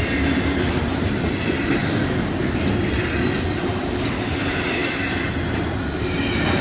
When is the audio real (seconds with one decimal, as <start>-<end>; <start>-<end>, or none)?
0.0-1.8; 2.4-6.6